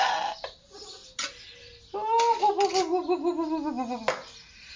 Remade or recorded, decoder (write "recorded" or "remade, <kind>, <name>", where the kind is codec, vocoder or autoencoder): recorded